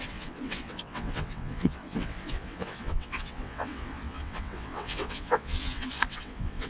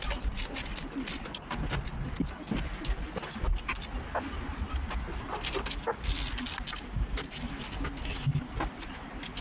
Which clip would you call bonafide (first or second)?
second